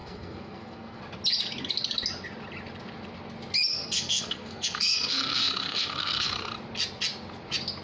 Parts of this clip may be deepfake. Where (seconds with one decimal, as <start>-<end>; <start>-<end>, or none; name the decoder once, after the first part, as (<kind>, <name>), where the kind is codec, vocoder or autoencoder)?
0.0-1.0 (codec, SNAC); 3.7-6.5